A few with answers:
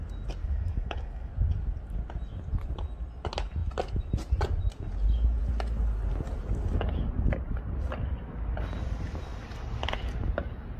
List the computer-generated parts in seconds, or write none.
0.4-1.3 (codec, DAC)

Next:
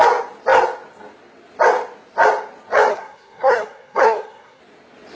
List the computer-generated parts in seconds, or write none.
2.9-4.6 (codec, SNAC)

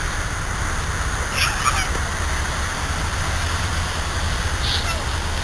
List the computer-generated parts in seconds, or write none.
none

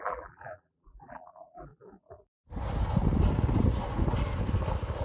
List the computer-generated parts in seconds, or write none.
0.0-1.7 (vocoder, BigVGAN v2)